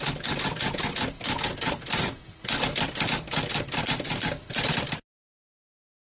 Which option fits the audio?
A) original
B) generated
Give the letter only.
A